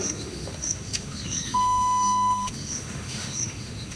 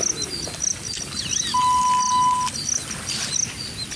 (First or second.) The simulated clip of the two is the first